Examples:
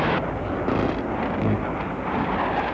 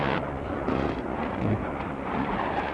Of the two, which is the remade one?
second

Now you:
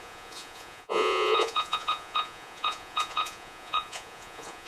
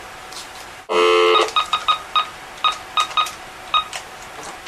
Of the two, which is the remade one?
first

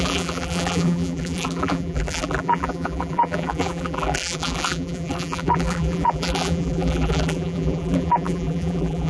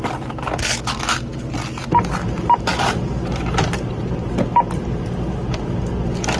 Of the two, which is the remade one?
first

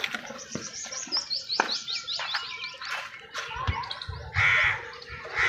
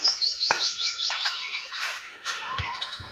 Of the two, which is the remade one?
second